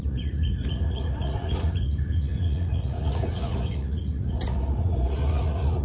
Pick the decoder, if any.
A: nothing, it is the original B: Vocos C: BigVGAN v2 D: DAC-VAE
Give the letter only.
B